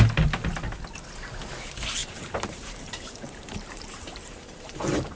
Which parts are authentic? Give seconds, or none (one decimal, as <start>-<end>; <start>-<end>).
0.0-2.0